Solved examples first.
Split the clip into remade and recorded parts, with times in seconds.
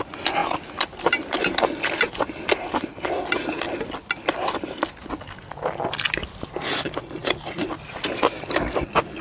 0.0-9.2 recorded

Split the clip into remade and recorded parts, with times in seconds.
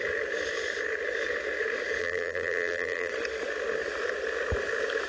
0.0-2.0 recorded; 2.0-3.1 remade; 3.1-5.1 recorded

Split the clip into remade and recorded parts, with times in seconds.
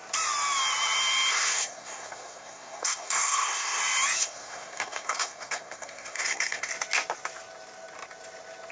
0.0-1.3 recorded; 1.3-3.8 remade; 3.8-4.2 recorded; 4.2-6.7 remade; 6.7-8.7 recorded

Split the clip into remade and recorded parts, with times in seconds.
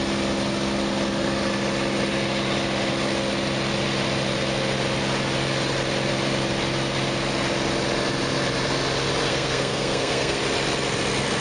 0.0-9.3 recorded; 9.3-10.4 remade; 10.4-11.4 recorded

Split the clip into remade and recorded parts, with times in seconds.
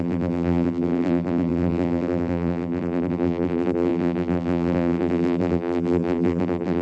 0.0-6.8 remade